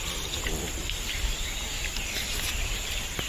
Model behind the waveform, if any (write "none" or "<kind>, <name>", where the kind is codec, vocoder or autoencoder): none